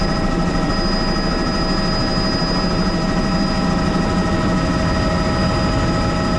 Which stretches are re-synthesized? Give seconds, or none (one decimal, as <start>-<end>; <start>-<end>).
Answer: 0.0-0.7